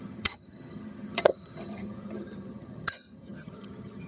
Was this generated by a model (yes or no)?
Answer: yes